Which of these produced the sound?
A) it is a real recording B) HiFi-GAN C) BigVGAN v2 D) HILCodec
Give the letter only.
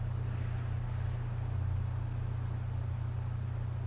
A